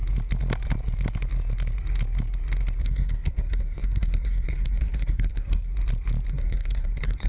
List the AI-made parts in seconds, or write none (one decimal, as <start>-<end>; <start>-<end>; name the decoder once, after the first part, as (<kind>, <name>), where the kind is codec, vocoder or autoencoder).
2.8-5.7 (codec, SNAC); 6.3-7.3